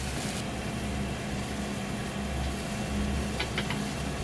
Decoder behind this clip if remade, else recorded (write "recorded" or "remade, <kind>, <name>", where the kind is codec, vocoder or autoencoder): recorded